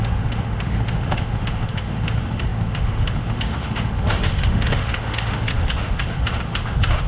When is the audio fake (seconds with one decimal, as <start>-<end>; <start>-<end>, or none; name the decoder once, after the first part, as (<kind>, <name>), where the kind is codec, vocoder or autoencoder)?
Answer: 0.0-7.1 (autoencoder, DAC-VAE)